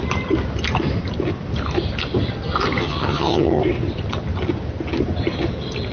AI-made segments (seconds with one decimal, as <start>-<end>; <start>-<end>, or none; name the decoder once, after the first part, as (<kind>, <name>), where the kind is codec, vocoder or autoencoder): 2.8-3.6 (vocoder, HiFi-GAN)